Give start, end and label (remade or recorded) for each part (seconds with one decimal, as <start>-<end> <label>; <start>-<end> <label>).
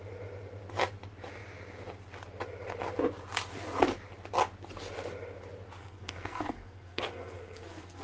0.0-5.8 recorded; 5.8-8.0 remade